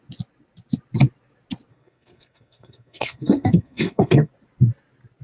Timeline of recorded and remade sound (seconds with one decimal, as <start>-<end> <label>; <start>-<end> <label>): 0.0-1.7 recorded; 1.7-4.3 remade; 4.3-5.2 recorded